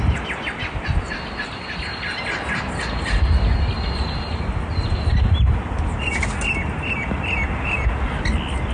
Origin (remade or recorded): recorded